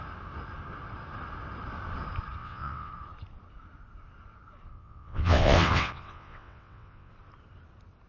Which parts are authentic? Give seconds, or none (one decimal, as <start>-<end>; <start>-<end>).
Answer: 0.0-2.4; 2.9-4.7; 7.1-8.1